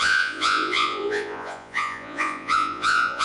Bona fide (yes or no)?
no